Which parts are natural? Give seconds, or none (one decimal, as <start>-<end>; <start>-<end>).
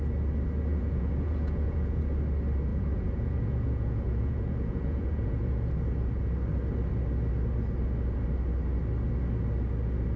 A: 0.0-0.7; 2.0-2.7; 5.7-10.2